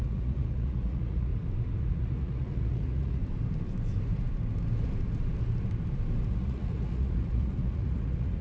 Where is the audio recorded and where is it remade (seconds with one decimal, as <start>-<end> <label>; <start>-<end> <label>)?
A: 0.0-1.3 remade; 1.3-1.8 recorded; 1.8-3.2 remade; 3.2-6.3 recorded; 6.3-8.4 remade